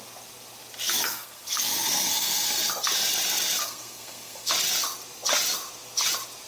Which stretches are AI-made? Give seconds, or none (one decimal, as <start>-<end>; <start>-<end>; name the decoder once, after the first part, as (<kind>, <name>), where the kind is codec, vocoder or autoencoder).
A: 1.1-2.7 (codec, SNAC); 3.6-4.5

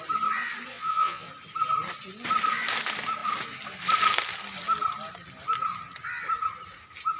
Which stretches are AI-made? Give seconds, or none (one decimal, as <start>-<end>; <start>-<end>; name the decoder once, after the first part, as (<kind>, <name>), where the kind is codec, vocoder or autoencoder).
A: 0.7-1.3 (vocoder, Vocos)